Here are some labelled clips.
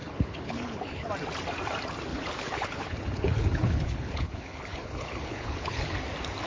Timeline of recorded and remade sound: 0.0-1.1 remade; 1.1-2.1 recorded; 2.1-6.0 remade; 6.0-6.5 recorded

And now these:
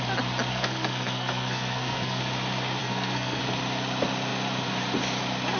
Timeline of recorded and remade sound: 0.0-0.5 recorded; 0.5-2.2 remade; 2.2-2.8 recorded; 2.8-3.4 remade; 3.4-5.6 recorded

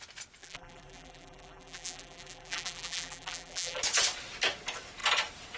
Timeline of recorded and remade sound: 0.0-0.4 recorded; 0.4-3.8 remade; 3.8-5.6 recorded

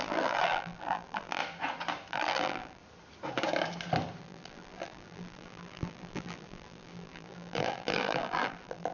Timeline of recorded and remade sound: 0.0-1.4 remade; 1.4-2.1 recorded; 2.1-2.8 remade; 2.8-4.2 recorded; 4.2-8.9 remade